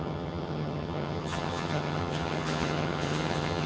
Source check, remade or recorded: remade